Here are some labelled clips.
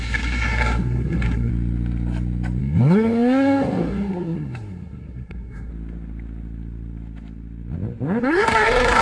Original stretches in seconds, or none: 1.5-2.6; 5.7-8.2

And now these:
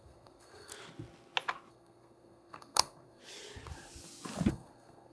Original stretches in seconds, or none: 0.7-1.7; 3.2-4.5

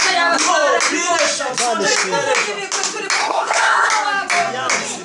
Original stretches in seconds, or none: 0.0-3.2; 3.9-5.0

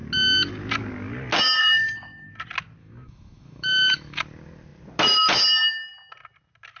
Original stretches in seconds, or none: 0.0-1.6; 2.3-2.8; 4.2-6.8

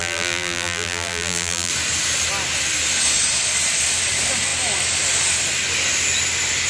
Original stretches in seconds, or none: 1.7-6.7

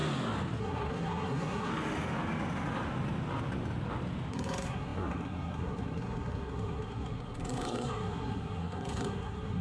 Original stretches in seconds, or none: 0.0-0.6; 1.7-4.3